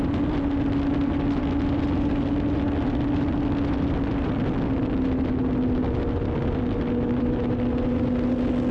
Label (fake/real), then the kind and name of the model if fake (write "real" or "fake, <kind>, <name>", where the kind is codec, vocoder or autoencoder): real